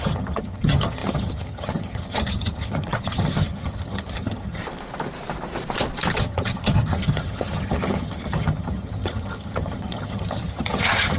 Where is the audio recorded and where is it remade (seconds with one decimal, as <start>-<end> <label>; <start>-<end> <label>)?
0.0-4.6 remade; 4.6-6.1 recorded; 6.1-11.2 remade